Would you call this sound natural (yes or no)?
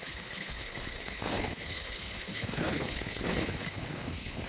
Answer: no